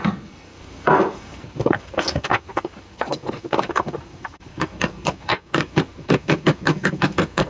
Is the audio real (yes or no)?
no